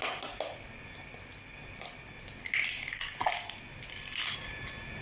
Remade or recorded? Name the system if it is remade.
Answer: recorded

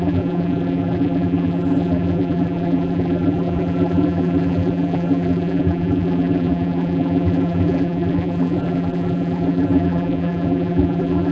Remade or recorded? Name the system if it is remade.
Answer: remade, vocoder, BigVGAN v2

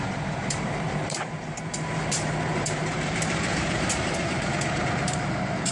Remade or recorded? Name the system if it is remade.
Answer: remade, vocoder, BigVGAN v2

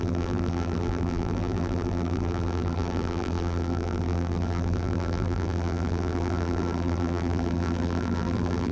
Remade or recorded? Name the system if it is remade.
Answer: remade, vocoder, BigVGAN v2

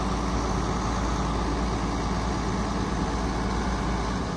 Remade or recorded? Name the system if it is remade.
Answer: recorded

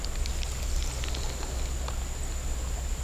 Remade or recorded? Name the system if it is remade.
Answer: recorded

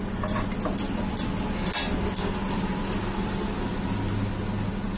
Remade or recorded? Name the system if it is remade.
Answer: recorded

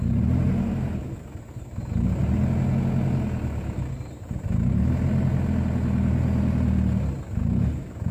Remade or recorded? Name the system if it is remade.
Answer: recorded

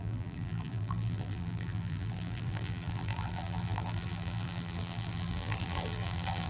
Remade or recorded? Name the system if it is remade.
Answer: remade, vocoder, BigVGAN v2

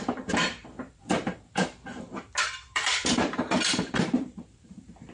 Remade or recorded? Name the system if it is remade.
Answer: remade, vocoder, BigVGAN v2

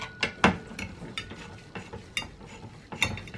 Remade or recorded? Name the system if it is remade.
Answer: recorded